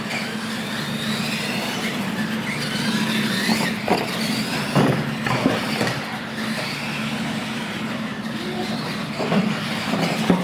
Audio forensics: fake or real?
real